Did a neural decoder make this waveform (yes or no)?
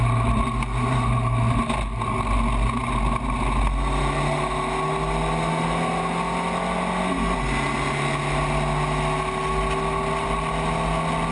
no